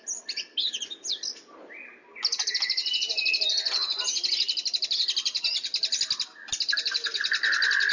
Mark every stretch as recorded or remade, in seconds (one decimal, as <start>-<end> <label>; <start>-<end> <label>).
0.0-7.9 recorded